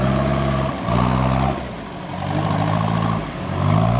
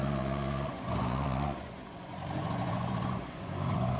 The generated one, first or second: second